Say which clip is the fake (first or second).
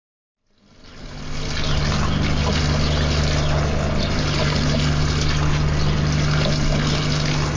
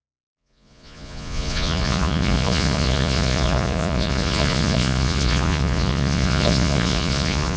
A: second